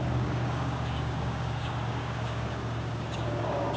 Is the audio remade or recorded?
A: remade